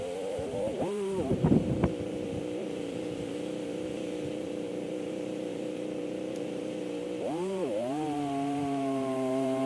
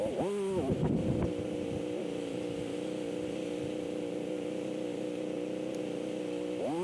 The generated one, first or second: first